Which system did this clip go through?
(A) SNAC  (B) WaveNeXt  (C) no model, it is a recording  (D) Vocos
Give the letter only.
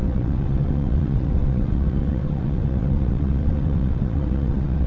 B